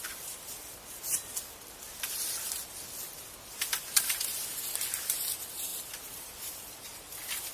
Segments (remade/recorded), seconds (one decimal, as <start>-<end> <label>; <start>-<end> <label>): 0.0-3.1 recorded; 3.1-3.7 remade; 3.7-5.7 recorded; 5.7-7.1 remade; 7.1-7.5 recorded